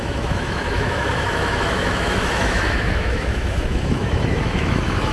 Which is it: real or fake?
fake